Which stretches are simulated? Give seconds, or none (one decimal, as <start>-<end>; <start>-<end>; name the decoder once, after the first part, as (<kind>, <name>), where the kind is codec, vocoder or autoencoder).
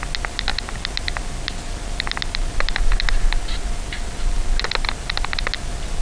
none